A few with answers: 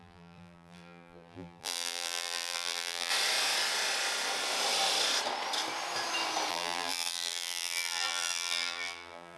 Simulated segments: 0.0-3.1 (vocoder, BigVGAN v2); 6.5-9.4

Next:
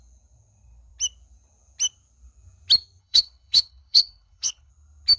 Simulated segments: 3.0-4.7 (codec, HILCodec)

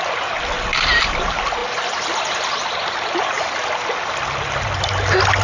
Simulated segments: none

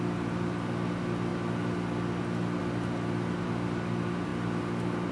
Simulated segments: none

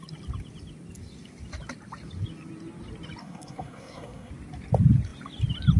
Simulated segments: 3.2-4.3 (codec, SNAC)

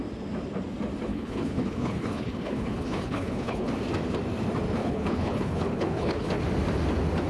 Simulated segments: 1.1-3.7 (codec, HILCodec); 4.8-6.4